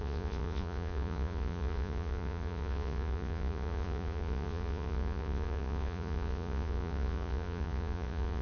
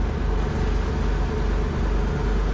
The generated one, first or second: first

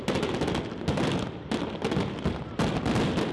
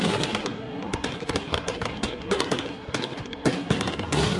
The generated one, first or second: second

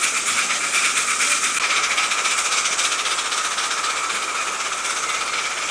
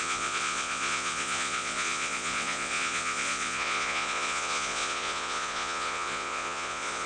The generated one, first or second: second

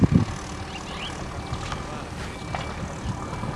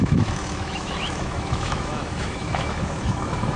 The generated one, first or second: second